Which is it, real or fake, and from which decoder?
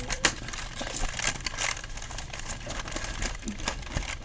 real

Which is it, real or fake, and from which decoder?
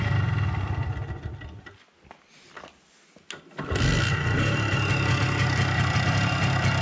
real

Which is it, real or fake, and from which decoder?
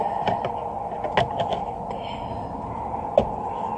real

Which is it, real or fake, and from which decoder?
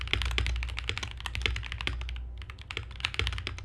real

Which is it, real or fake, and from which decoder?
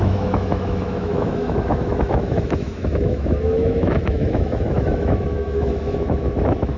fake, autoencoder, DAC-VAE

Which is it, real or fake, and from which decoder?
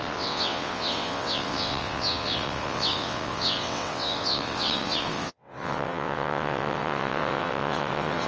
fake, vocoder, WaveNeXt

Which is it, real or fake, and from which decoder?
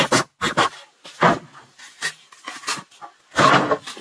real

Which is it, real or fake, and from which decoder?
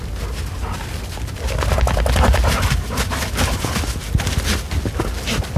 real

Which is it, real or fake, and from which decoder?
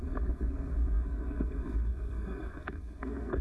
fake, codec, SNAC